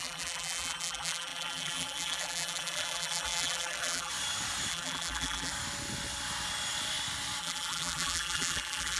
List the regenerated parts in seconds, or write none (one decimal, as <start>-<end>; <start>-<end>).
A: 0.0-4.1; 4.7-5.5; 7.4-9.0